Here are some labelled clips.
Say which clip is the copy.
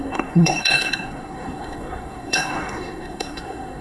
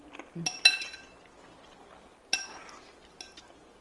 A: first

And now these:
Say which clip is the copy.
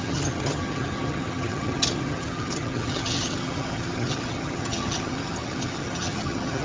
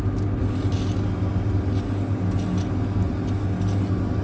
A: first